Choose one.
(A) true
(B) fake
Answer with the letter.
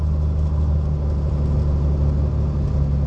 A